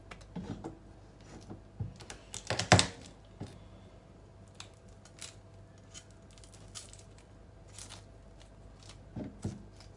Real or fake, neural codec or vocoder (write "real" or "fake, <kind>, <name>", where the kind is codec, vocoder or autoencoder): real